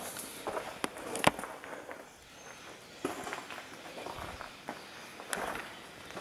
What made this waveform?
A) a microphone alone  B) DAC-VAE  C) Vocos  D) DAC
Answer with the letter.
A